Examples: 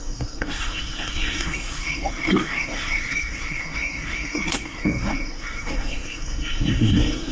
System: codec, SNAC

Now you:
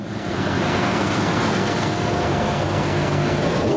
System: codec, SNAC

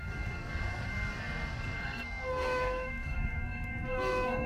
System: codec, SNAC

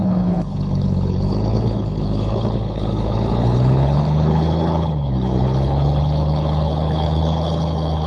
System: codec, HILCodec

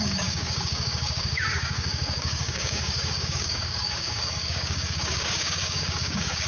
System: codec, DAC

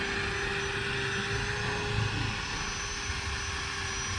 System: none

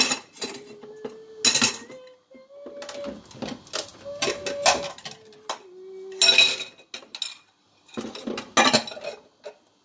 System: none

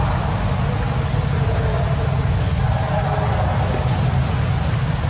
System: none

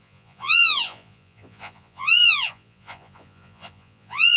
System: vocoder, Vocos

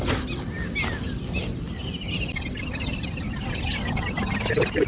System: none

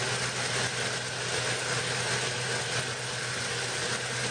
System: none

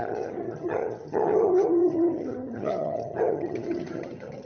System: vocoder, HiFi-GAN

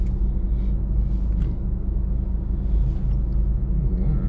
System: none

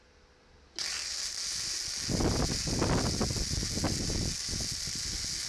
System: none